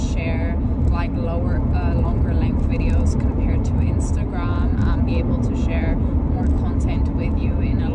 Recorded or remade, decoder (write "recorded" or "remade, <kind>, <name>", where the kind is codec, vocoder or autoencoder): recorded